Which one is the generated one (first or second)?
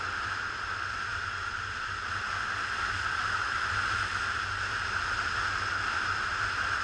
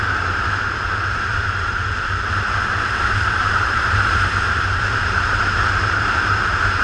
second